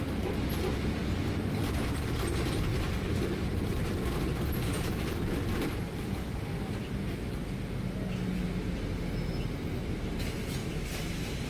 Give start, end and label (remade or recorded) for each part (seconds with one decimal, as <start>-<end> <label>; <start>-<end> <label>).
0.0-11.5 recorded